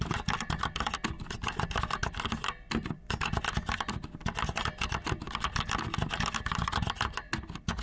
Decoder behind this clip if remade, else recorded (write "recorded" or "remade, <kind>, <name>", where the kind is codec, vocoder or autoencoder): recorded